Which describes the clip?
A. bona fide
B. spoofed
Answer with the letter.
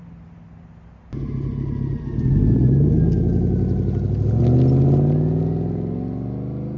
A